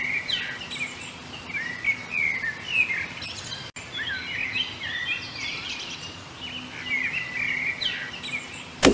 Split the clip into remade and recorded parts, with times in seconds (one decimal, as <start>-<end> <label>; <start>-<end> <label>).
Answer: 0.0-8.9 recorded